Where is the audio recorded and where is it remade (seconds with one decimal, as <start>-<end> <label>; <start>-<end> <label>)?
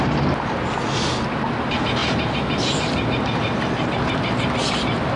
0.0-5.2 recorded